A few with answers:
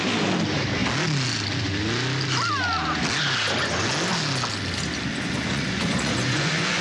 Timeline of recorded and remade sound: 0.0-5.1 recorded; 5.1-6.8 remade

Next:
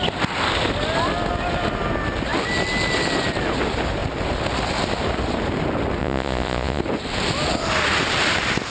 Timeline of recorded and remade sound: 0.0-6.0 recorded; 6.0-6.8 remade; 6.8-8.7 recorded

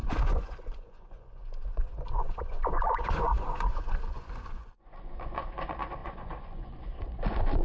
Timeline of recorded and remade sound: 0.0-7.6 remade

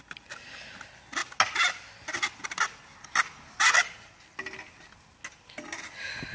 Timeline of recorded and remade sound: 0.0-6.3 recorded

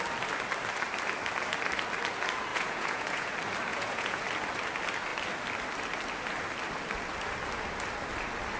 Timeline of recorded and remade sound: 0.0-2.5 recorded; 2.5-3.3 remade; 3.3-3.7 recorded; 3.7-4.2 remade; 4.2-8.6 recorded

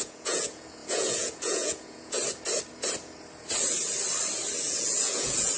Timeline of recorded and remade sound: 0.0-2.2 remade; 2.2-4.7 recorded; 4.7-5.6 remade